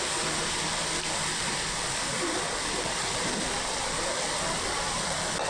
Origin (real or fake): real